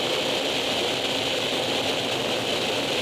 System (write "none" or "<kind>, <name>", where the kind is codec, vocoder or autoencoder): none